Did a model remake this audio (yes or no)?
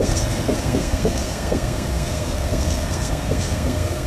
yes